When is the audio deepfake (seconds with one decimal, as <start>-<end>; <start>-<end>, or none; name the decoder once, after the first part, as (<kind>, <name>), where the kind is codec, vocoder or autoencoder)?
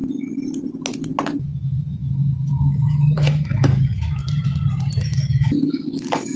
1.4-4.2 (autoencoder, DAC-VAE); 5.0-6.4